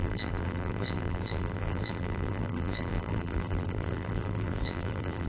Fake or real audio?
fake